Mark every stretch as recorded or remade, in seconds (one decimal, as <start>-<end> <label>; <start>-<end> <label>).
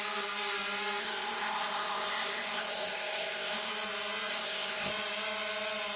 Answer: 0.0-1.0 recorded; 1.0-3.7 remade; 3.7-4.3 recorded; 4.3-4.9 remade; 4.9-6.0 recorded